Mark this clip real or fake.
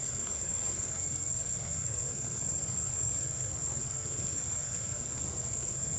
fake